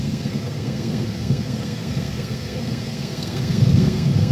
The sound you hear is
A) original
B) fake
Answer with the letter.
B